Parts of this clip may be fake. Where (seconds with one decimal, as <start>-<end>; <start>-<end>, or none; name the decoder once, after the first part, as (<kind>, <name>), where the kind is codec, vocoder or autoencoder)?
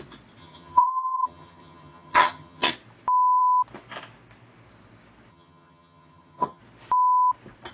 0.4-2.7 (vocoder, HiFi-GAN); 5.3-6.6